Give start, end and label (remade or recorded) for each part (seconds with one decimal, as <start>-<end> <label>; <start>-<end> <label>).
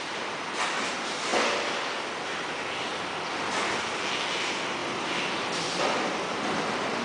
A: 0.0-4.8 recorded; 4.8-5.8 remade; 5.8-7.0 recorded